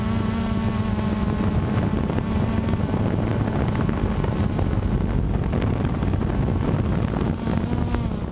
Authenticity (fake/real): real